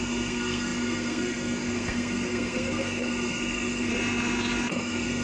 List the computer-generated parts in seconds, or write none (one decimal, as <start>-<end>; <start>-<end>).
0.0-3.9; 4.7-5.2